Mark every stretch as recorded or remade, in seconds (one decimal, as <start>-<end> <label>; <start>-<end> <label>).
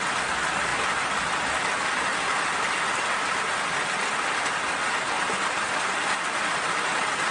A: 0.0-7.3 recorded